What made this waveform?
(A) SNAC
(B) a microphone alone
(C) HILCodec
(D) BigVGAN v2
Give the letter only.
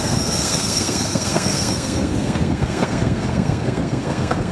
A